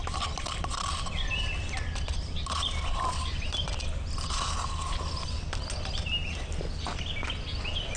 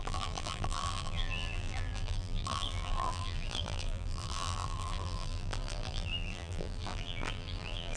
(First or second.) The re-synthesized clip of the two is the second